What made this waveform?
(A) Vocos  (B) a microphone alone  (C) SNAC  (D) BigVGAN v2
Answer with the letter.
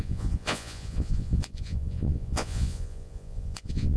A